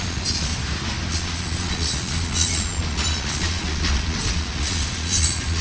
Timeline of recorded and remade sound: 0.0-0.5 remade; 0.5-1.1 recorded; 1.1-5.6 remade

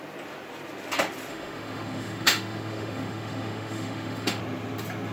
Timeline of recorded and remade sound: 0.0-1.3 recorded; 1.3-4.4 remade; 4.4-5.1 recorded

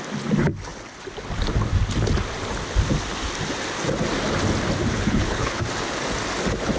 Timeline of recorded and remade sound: 0.0-4.9 recorded; 4.9-5.6 remade; 5.6-6.8 recorded